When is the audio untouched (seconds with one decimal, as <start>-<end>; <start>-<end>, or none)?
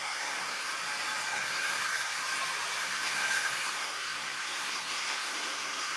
0.7-1.3; 2.2-2.8